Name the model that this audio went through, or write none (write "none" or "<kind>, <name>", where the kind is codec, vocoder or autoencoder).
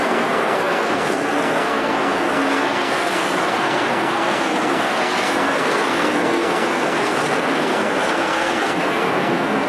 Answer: codec, SNAC